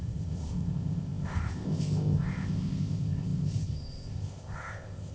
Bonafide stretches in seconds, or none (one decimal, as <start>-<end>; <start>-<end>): none